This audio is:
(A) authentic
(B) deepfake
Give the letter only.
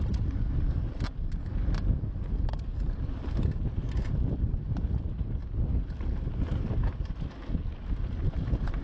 A